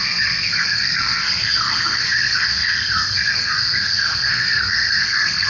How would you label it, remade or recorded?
remade